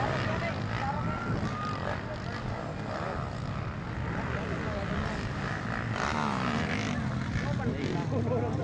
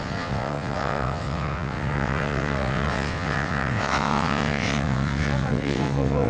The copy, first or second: second